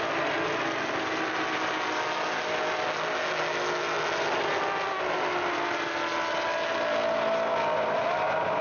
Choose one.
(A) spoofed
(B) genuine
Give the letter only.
B